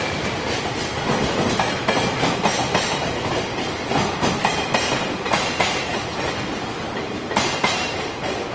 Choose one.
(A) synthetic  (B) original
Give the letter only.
A